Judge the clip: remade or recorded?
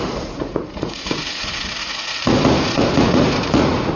remade